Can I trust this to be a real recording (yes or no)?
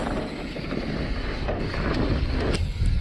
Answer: yes